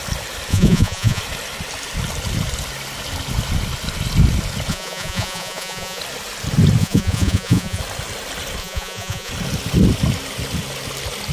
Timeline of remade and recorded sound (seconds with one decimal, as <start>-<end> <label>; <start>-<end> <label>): 0.0-0.5 recorded; 0.5-1.2 remade; 1.2-4.7 recorded; 4.7-6.0 remade; 6.0-6.8 recorded; 6.8-7.8 remade; 7.8-8.6 recorded; 8.6-9.3 remade; 9.3-11.3 recorded